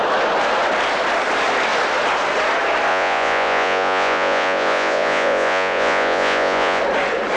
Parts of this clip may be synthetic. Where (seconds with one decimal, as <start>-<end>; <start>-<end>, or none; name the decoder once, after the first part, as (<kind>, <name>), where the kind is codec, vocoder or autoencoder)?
2.9-6.8 (vocoder, Vocos)

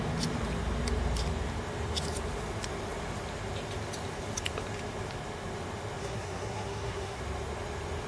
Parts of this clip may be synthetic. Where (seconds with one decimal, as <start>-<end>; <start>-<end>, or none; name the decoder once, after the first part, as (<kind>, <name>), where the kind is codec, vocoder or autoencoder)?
6.0-7.2 (codec, SNAC)

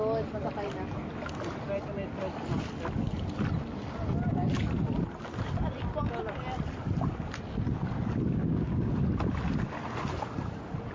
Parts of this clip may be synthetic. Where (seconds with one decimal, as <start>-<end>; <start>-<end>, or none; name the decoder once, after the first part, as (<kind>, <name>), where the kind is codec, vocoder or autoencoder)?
8.4-8.9 (codec, DAC)

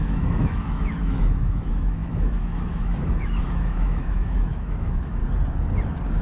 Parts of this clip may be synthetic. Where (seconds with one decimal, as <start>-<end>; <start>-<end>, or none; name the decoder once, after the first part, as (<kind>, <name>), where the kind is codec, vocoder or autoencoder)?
0.0-5.2 (autoencoder, DAC-VAE)